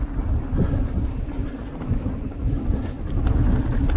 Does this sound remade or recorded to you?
recorded